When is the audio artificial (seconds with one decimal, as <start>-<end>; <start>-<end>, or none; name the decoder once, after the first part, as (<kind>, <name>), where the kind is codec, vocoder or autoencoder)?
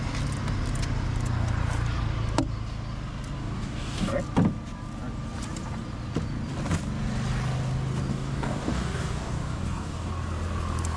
3.4-4.1 (codec, DAC); 8.1-10.1